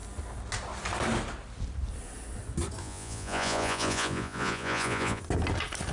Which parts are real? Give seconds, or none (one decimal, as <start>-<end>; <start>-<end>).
0.0-2.8; 5.2-5.9